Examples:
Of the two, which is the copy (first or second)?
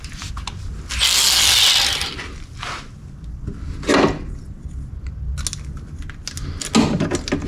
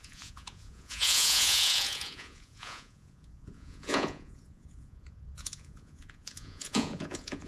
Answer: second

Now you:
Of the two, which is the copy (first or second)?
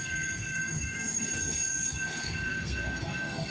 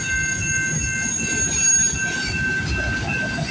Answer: first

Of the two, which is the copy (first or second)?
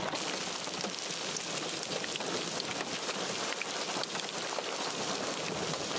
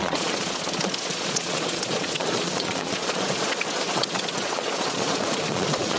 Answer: second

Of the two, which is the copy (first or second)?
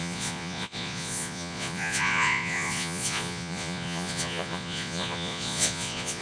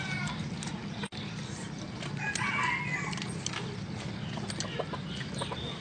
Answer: first